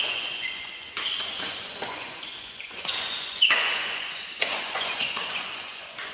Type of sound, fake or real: fake